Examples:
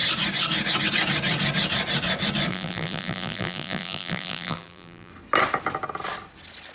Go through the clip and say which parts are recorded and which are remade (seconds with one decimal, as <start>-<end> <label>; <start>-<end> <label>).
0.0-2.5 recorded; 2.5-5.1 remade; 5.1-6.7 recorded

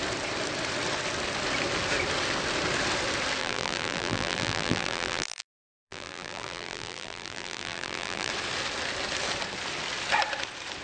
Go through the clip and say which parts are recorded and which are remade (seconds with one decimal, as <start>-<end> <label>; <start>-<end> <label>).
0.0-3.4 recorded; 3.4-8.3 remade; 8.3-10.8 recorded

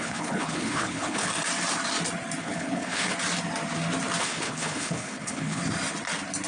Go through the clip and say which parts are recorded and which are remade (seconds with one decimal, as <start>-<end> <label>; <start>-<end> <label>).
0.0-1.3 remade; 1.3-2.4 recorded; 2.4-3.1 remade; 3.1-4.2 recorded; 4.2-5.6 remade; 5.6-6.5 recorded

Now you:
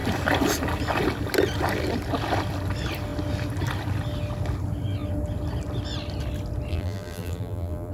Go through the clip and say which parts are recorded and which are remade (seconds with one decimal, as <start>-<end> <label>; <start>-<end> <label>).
0.0-6.7 recorded; 6.7-7.9 remade